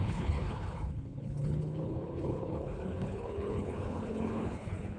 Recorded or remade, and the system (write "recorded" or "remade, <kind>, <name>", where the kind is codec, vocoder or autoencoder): remade, codec, HILCodec